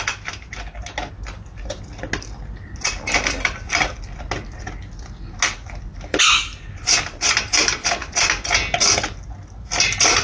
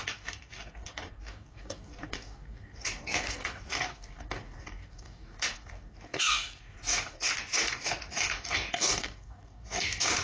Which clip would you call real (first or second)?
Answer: first